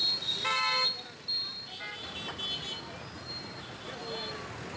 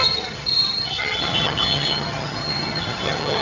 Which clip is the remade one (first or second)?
second